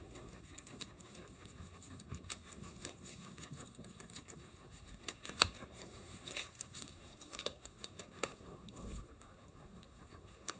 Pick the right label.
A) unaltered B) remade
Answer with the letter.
B